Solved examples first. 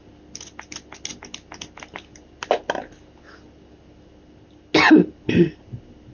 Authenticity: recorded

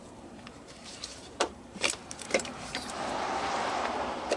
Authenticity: remade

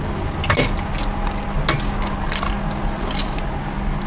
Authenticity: recorded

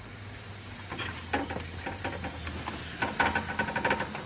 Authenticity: recorded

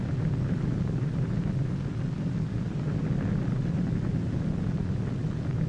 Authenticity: recorded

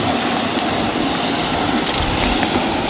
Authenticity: recorded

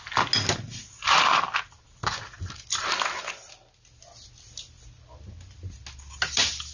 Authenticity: recorded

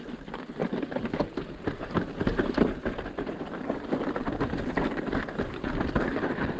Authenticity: recorded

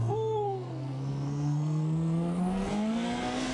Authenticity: remade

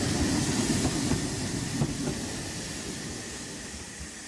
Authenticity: recorded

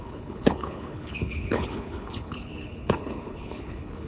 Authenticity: remade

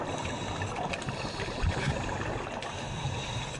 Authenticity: recorded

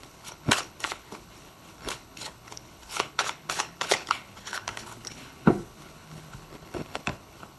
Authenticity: remade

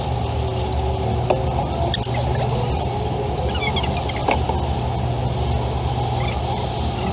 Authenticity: recorded